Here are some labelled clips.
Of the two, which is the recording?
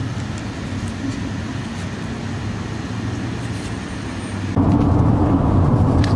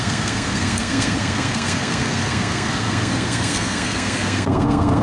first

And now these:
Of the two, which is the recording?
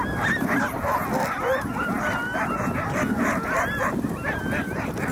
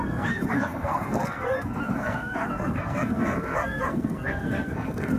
first